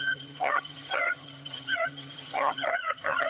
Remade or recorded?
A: remade